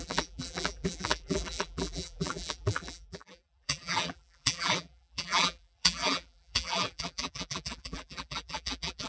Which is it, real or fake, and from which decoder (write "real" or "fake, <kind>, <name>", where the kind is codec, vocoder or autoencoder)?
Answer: fake, vocoder, BigVGAN v2